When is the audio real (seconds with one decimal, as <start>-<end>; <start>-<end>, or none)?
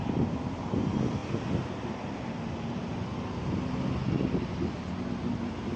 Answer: 0.0-5.8